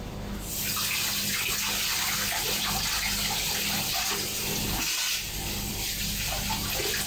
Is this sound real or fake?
real